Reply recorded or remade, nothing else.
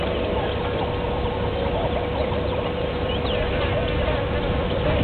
recorded